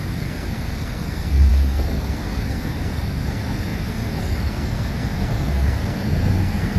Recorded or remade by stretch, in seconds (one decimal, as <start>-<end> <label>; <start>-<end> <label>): 0.0-6.8 remade